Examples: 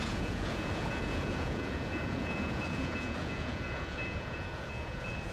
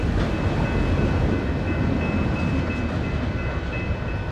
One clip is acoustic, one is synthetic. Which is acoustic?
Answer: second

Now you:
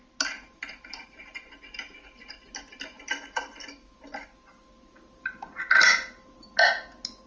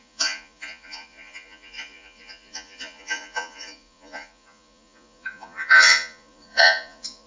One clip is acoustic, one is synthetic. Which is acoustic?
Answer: first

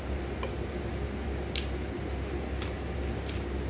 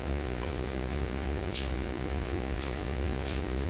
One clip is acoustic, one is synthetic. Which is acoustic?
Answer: first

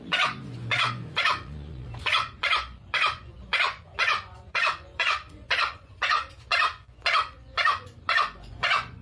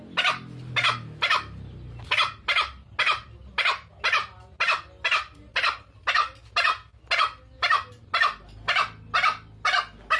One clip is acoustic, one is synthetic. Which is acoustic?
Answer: second